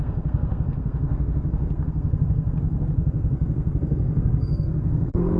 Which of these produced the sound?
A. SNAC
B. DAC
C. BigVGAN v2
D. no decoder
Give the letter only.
A